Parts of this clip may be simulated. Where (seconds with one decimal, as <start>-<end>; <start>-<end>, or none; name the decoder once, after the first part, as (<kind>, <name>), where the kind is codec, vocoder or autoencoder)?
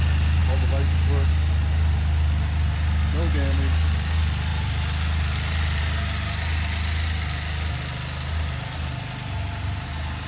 none